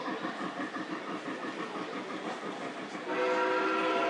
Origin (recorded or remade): recorded